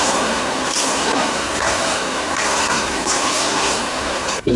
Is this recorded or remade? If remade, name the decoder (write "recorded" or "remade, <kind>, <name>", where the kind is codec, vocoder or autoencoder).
remade, codec, SNAC